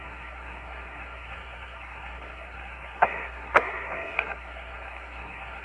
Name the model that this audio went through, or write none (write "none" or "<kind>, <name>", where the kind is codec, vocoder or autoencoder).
codec, SNAC